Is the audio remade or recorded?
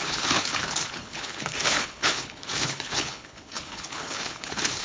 remade